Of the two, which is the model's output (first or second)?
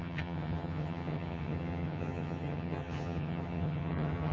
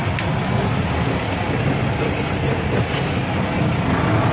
first